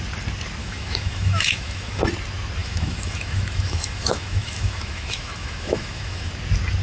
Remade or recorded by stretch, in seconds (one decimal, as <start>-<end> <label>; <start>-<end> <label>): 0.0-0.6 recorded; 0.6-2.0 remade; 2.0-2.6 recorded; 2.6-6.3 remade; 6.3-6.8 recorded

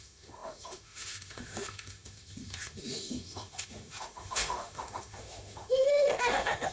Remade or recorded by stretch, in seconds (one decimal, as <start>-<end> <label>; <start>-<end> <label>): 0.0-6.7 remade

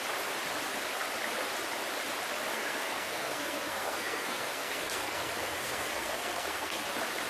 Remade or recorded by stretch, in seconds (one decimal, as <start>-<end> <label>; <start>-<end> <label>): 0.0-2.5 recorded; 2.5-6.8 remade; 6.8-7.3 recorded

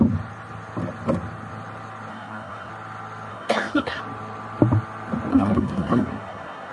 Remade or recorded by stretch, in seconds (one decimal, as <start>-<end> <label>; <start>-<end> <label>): 0.0-2.1 recorded; 2.1-2.7 remade; 2.7-3.3 recorded; 3.3-4.0 remade; 4.0-5.3 recorded; 5.3-6.7 remade

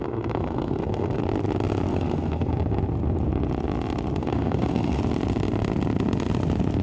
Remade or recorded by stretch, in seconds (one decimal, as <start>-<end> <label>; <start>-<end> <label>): 0.0-1.2 remade; 1.2-1.9 recorded; 1.9-2.5 remade; 2.5-4.2 recorded; 4.2-5.0 remade; 5.0-6.8 recorded

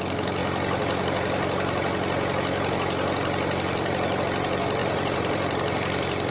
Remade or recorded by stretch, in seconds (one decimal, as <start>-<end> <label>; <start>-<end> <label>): 0.0-4.8 recorded; 4.8-6.3 remade